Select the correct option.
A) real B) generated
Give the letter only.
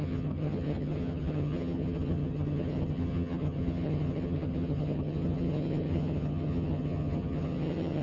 B